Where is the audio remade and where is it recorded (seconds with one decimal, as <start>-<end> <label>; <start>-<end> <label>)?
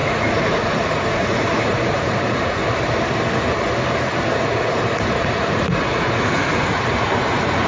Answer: 0.0-2.6 remade; 2.6-4.3 recorded; 4.3-7.7 remade